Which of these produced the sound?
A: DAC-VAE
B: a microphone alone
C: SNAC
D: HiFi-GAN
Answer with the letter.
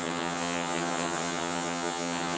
D